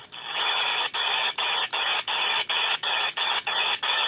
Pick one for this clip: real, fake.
fake